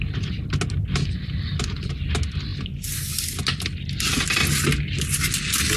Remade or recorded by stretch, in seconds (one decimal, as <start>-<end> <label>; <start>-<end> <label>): 0.0-5.8 recorded